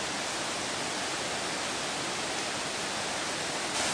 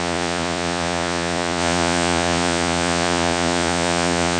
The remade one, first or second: second